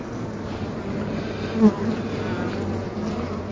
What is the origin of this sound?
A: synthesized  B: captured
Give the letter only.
B